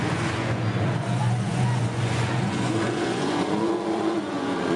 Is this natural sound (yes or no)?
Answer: no